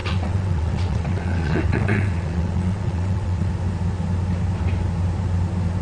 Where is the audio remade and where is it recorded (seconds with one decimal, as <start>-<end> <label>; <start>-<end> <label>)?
0.0-3.5 remade; 3.5-5.8 recorded